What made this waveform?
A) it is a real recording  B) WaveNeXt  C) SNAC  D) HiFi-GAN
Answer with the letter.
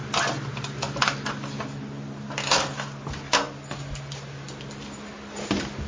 A